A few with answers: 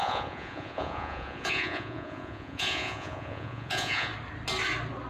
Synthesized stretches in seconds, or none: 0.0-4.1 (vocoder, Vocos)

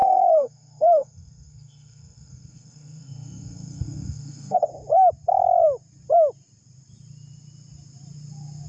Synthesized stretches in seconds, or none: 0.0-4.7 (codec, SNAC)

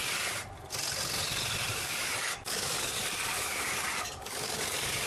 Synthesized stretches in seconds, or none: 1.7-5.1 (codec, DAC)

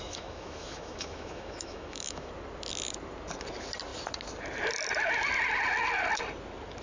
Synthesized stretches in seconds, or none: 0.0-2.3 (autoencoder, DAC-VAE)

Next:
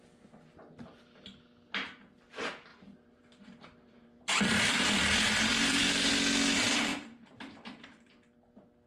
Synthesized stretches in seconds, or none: 2.7-6.1 (vocoder, BigVGAN v2); 6.9-8.1

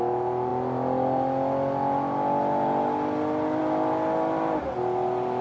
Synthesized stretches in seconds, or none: none

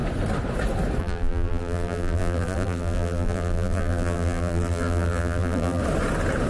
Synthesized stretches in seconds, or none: 1.0-5.8 (vocoder, BigVGAN v2)